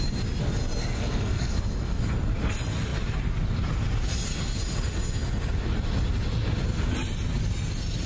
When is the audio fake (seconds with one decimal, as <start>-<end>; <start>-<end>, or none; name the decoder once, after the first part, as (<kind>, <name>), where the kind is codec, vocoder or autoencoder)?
0.8-2.0 (codec, SNAC)